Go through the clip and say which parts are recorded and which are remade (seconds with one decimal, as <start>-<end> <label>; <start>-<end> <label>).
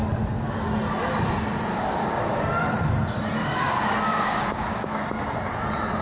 0.0-1.7 recorded; 1.7-2.4 remade; 2.4-3.4 recorded; 3.4-5.0 remade; 5.0-6.0 recorded